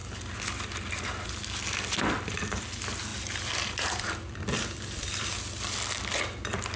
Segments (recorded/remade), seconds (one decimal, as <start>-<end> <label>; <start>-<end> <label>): 0.0-3.1 recorded; 3.1-5.3 remade; 5.3-6.8 recorded